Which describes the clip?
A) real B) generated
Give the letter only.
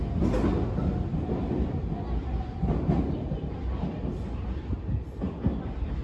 A